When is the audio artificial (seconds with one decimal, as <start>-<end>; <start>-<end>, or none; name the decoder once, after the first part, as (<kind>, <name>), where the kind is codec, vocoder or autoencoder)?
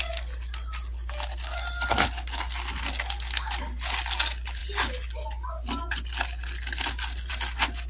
none